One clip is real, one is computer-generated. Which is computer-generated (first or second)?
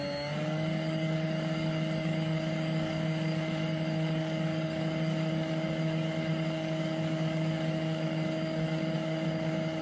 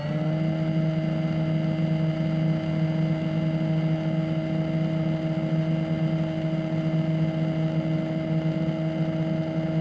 first